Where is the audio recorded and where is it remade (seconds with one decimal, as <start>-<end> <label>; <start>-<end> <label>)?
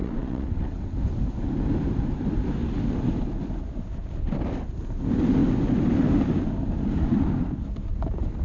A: 0.0-1.0 remade; 1.0-8.4 recorded